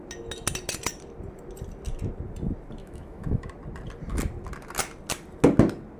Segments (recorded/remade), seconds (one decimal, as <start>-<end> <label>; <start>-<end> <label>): 0.0-2.8 recorded; 2.8-3.5 remade; 3.5-6.0 recorded